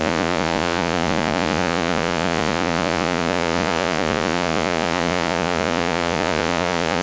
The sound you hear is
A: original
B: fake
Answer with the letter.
B